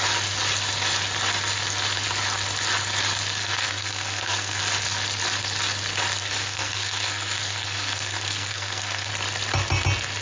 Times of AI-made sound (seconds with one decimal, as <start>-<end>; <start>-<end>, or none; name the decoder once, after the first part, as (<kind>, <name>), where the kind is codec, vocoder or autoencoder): 3.4-4.6 (codec, SNAC); 6.2-9.1